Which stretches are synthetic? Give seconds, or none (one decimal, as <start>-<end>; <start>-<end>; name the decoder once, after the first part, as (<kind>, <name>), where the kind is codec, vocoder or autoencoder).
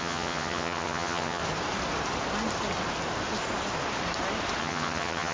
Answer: 0.0-1.4 (vocoder, HiFi-GAN); 4.6-5.3